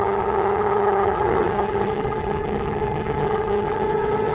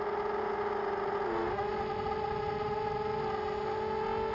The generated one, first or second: first